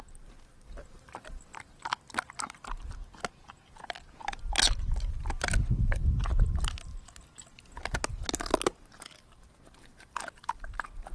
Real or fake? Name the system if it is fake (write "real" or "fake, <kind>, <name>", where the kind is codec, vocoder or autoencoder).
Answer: real